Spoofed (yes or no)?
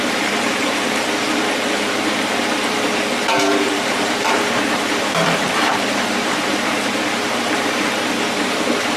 yes